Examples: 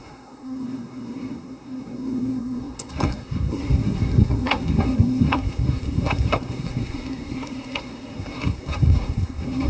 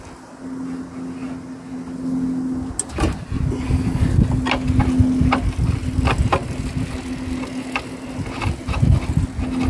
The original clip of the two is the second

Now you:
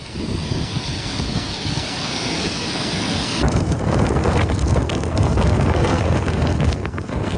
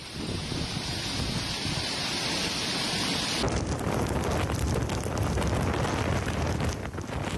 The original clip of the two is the second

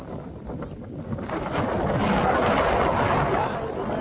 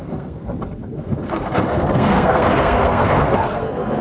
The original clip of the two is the first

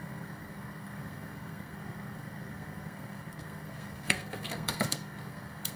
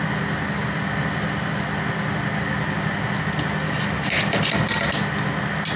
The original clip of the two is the second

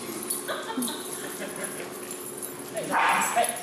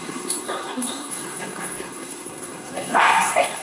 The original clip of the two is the first